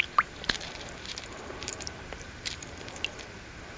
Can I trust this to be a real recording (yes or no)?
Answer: no